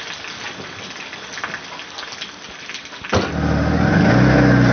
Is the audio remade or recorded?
recorded